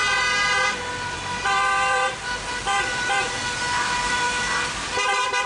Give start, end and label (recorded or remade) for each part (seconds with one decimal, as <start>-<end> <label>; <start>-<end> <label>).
0.0-0.7 recorded; 0.7-3.4 remade; 3.4-4.1 recorded; 4.1-5.5 remade